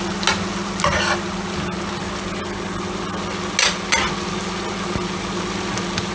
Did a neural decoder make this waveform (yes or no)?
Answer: no